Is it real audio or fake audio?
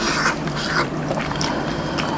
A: fake